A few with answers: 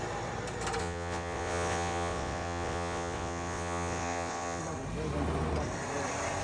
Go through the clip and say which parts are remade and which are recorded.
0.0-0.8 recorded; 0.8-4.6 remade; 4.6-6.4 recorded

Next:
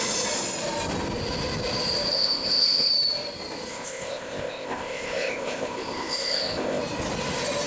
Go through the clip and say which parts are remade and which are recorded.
0.0-2.1 recorded; 2.1-2.9 remade; 2.9-3.7 recorded; 3.7-6.8 remade; 6.8-7.7 recorded

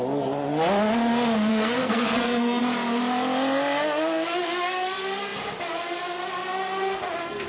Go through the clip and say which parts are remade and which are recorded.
0.0-1.5 recorded; 1.5-2.6 remade; 2.6-7.5 recorded

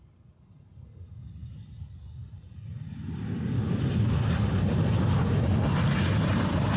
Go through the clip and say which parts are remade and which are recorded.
0.0-6.8 recorded

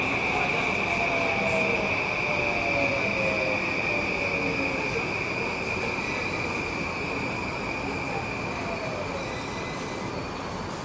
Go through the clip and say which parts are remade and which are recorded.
0.0-10.8 recorded

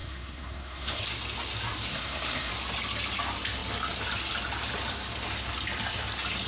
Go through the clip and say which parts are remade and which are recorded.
0.0-1.0 remade; 1.0-1.9 recorded; 1.9-2.5 remade; 2.5-6.5 recorded

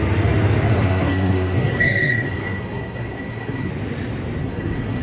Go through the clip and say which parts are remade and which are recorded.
0.0-0.7 recorded; 0.7-3.7 remade; 3.7-4.4 recorded; 4.4-5.0 remade